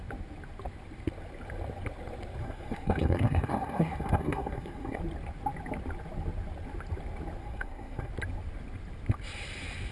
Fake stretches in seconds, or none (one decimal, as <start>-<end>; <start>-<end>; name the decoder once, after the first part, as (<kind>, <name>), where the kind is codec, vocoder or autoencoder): 2.4-5.0 (codec, SNAC); 7.4-8.1